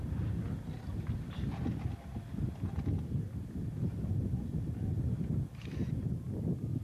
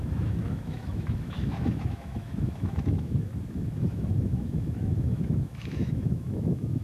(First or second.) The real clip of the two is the first